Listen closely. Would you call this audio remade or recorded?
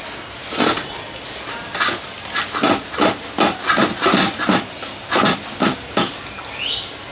recorded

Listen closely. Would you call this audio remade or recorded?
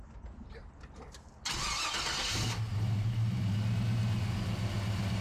recorded